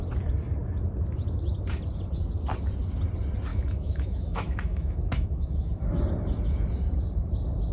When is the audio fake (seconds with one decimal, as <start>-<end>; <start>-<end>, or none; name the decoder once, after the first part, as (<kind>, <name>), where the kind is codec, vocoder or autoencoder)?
3.5-6.0 (autoencoder, DAC-VAE)